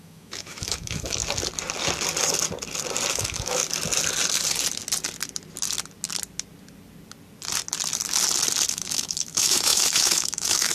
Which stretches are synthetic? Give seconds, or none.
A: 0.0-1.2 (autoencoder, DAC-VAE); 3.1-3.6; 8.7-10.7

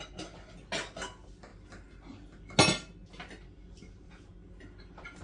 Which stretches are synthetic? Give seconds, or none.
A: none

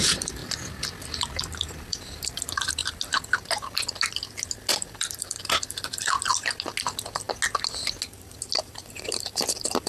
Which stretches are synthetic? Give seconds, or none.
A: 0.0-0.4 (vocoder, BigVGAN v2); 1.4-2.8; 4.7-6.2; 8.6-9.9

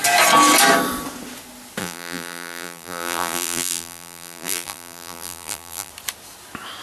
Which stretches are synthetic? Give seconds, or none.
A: 1.8-5.9 (vocoder, BigVGAN v2)

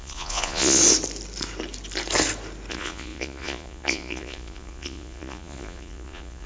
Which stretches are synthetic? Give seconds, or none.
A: 0.0-0.8 (vocoder, Vocos); 2.7-6.5

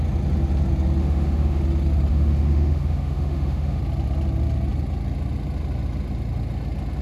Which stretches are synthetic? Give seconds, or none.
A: 1.0-1.6 (autoencoder, DAC-VAE); 2.1-3.8

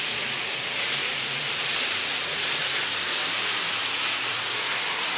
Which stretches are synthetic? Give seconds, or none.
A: 0.0-3.2 (vocoder, Vocos); 3.7-5.2